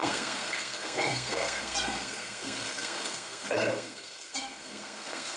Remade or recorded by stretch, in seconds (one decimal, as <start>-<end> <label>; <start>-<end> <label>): 0.0-5.4 remade